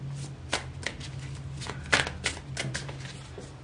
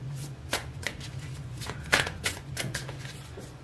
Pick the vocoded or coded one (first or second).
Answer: second